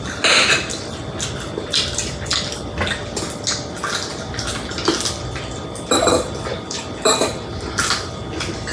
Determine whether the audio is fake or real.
real